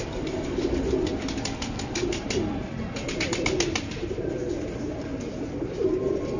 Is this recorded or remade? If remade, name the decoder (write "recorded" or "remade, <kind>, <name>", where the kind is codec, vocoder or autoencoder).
recorded